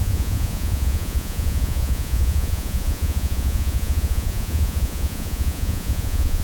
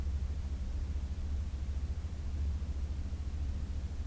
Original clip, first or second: second